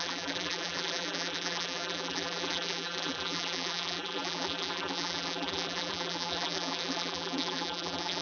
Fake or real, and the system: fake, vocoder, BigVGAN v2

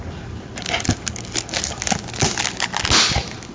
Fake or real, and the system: real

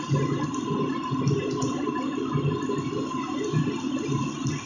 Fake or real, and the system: real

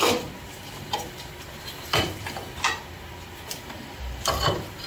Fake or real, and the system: fake, vocoder, BigVGAN v2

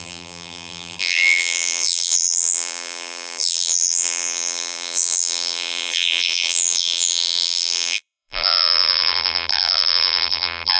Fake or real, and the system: fake, vocoder, BigVGAN v2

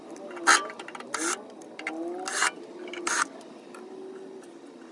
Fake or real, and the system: real